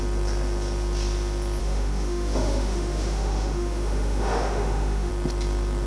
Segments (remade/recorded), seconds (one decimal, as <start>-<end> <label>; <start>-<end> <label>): 0.0-1.6 recorded; 1.6-5.1 remade; 5.1-5.9 recorded